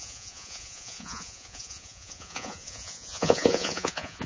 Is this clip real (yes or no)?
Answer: no